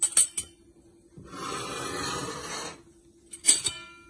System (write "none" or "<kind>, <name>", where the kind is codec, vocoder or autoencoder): none